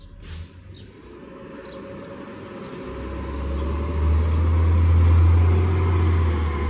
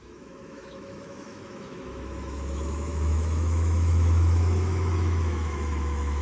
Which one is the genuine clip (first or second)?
first